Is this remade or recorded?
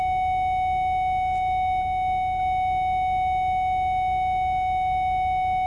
recorded